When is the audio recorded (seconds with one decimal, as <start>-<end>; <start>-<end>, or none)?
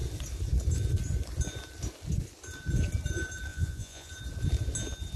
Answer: 0.0-3.5; 4.1-5.2